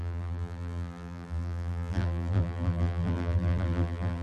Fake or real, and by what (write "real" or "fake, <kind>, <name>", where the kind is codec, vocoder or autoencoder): fake, vocoder, BigVGAN v2